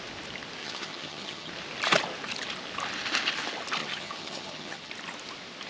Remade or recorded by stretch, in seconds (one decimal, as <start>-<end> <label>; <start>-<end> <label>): 0.0-0.6 recorded; 0.6-1.5 remade; 1.5-3.8 recorded; 3.8-4.9 remade; 4.9-5.7 recorded